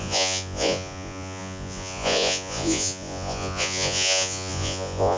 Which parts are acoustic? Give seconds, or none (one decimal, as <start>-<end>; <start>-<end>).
none